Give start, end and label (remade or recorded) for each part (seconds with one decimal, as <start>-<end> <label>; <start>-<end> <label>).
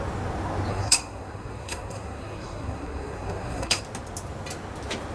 0.0-0.7 recorded; 0.7-3.8 remade; 3.8-5.1 recorded